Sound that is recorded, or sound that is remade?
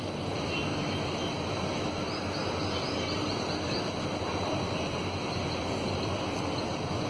remade